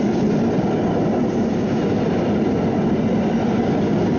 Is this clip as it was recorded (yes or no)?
yes